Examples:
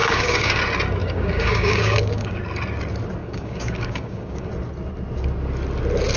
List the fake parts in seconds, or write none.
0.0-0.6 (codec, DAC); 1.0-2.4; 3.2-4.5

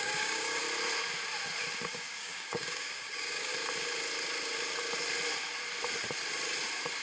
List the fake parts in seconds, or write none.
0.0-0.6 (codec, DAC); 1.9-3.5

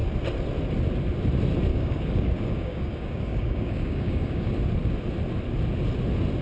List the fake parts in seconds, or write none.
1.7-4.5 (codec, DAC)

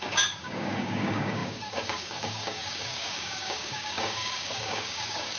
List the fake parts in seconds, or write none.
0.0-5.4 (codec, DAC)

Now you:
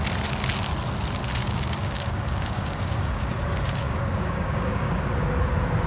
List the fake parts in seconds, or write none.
1.4-4.9 (codec, DAC)

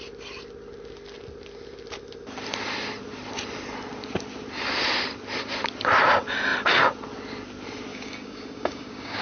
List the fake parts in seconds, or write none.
7.9-9.2 (codec, DAC)

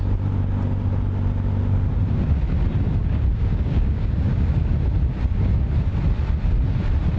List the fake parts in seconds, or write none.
3.0-4.7 (codec, DAC)

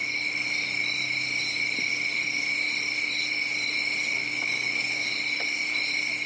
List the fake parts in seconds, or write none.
4.2-5.1 (codec, DAC)